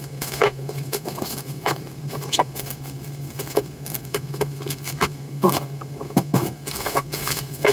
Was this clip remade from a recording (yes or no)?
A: yes